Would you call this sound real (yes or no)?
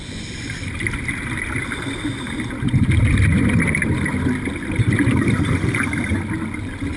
yes